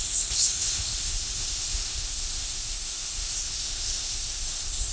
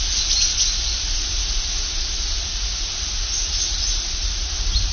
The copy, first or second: first